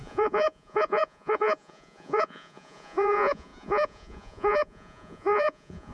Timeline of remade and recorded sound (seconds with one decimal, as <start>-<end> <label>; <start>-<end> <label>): 0.0-5.9 remade